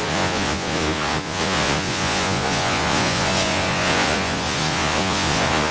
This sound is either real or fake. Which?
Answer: fake